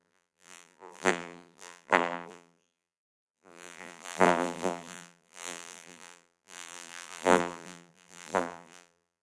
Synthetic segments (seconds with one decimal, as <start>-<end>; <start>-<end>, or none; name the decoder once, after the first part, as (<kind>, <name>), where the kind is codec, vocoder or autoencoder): 0.0-9.2 (vocoder, BigVGAN v2)